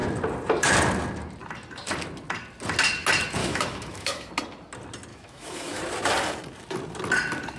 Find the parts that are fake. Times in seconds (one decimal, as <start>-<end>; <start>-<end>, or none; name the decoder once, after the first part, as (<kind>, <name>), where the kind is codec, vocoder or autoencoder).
3.4-4.3 (autoencoder, DAC-VAE); 5.1-5.8